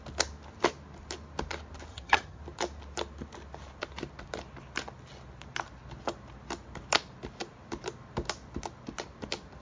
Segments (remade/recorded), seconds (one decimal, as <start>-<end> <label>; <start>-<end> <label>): 0.0-1.9 recorded; 1.9-2.4 remade; 2.4-9.6 recorded